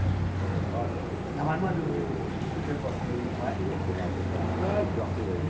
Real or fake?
real